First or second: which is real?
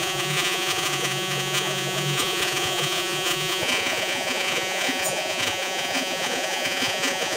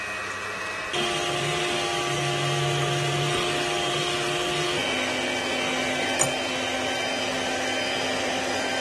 second